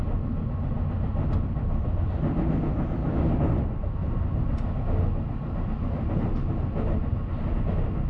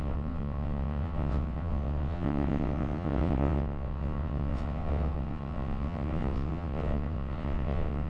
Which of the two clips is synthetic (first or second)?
second